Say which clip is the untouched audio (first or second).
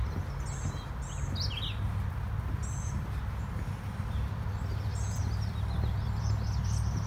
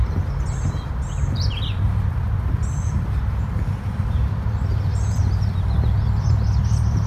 first